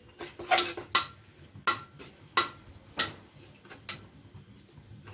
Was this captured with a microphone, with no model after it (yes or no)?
yes